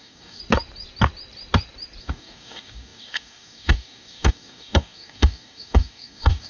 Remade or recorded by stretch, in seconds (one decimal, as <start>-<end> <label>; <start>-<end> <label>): 0.0-0.4 remade; 0.4-2.0 recorded; 2.0-6.5 remade